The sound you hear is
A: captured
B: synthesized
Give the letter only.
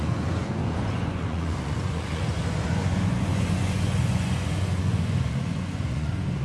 B